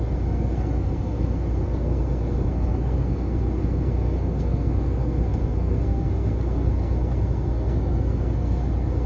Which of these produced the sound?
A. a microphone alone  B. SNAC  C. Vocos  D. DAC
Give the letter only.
B